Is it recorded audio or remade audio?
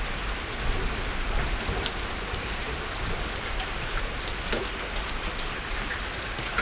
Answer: recorded